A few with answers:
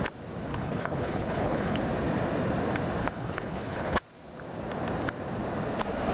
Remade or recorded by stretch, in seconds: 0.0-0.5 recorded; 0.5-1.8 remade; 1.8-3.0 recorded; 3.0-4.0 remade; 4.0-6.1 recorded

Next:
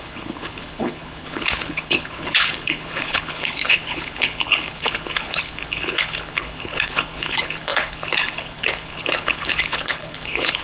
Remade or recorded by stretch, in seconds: 0.0-10.6 remade

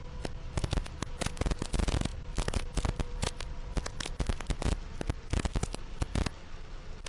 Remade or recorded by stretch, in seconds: 0.0-7.1 recorded

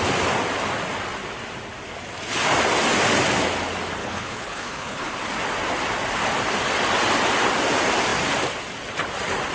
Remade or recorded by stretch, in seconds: 0.0-4.0 recorded; 4.0-5.1 remade; 5.1-9.5 recorded

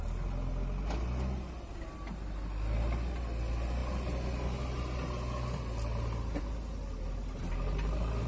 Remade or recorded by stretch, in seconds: 0.0-8.3 recorded

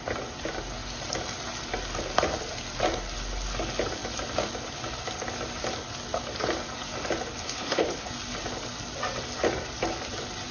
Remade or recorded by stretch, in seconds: 0.0-7.4 recorded; 7.4-8.1 remade; 8.1-10.5 recorded

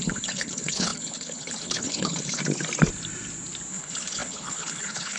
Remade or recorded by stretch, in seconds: 0.0-2.4 remade; 2.4-3.7 recorded; 3.7-5.2 remade